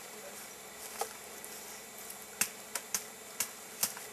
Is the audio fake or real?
real